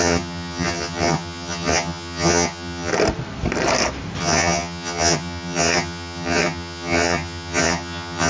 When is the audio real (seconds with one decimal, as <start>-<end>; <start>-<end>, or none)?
2.9-4.2